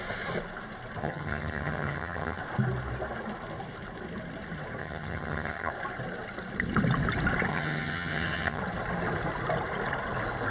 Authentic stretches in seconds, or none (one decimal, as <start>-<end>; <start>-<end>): 0.0-1.0; 2.4-4.8; 5.7-7.5; 8.6-10.5

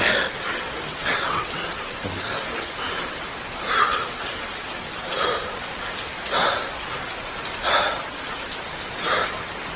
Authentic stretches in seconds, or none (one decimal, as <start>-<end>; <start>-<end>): 0.0-0.9; 1.5-9.8

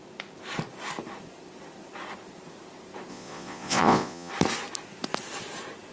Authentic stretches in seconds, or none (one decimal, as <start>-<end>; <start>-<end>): 0.0-3.1; 4.3-5.9